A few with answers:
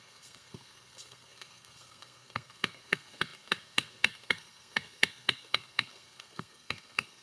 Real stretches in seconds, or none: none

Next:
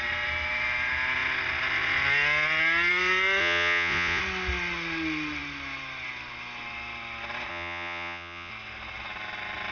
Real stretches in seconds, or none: 0.0-3.4; 4.2-7.5; 8.5-9.7

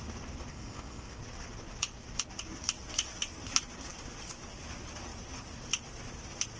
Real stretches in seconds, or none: 0.0-0.5; 1.2-6.6

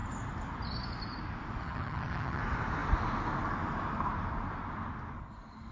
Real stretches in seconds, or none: 0.0-1.6; 2.4-5.7

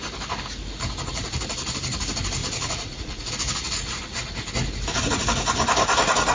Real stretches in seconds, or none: 0.0-2.4; 3.3-6.3

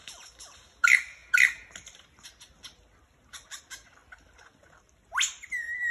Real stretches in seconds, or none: 0.0-5.9